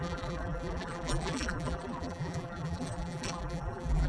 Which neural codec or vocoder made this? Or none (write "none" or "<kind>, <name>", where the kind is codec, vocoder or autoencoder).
vocoder, BigVGAN v2